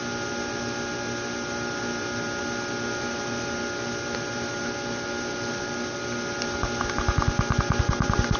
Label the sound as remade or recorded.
recorded